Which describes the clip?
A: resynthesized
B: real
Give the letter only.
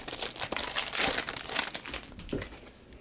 B